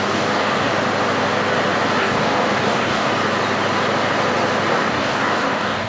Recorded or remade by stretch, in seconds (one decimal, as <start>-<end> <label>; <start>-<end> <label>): 0.0-0.7 remade; 0.7-2.0 recorded; 2.0-3.1 remade; 3.1-4.7 recorded; 4.7-5.9 remade